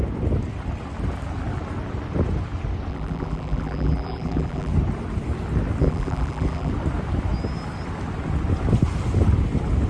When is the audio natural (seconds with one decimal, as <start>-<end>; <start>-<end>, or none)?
0.0-2.9; 4.7-5.8; 6.7-9.9